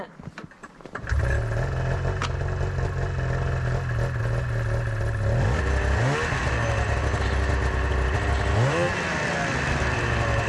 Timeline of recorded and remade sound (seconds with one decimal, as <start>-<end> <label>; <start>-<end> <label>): 0.0-0.6 recorded; 0.6-1.2 remade; 1.2-10.5 recorded